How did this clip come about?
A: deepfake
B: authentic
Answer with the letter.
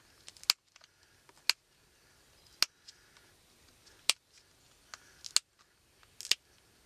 B